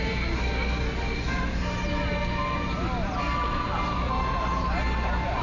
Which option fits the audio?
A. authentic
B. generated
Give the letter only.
A